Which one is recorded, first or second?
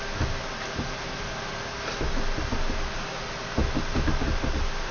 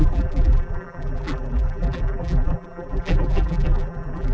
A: first